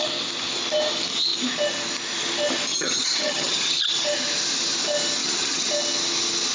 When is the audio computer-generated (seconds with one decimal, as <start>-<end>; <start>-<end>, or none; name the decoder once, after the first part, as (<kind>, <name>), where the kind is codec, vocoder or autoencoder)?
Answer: 2.7-3.7 (vocoder, HiFi-GAN); 5.2-5.7